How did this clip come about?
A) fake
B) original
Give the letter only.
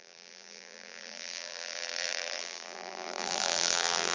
A